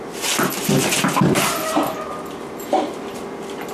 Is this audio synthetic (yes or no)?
no